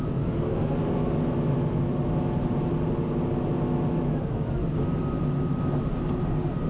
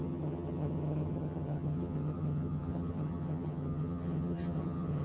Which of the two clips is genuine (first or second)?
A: first